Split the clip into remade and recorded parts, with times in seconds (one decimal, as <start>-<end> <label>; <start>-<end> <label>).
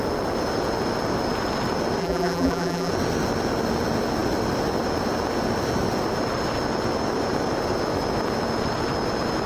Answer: 0.0-2.0 recorded; 2.0-2.9 remade; 2.9-9.5 recorded